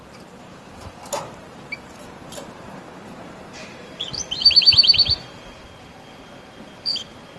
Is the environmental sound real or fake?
fake